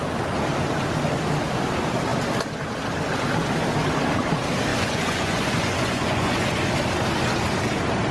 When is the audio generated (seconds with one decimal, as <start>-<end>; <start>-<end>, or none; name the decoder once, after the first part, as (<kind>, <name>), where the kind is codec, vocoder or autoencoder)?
4.7-6.7 (vocoder, Vocos)